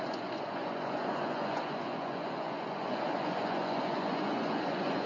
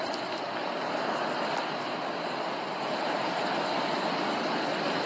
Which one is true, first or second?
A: second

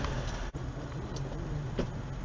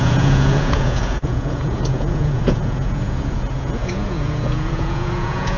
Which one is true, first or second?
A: first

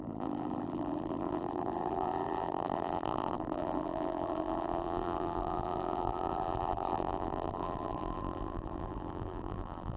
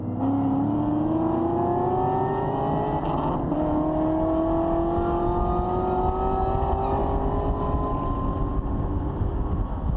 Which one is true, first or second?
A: second